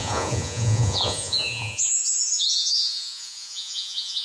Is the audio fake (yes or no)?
yes